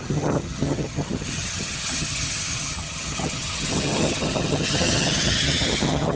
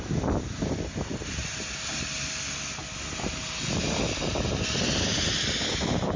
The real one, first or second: second